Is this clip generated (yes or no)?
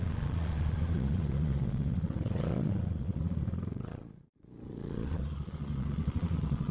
yes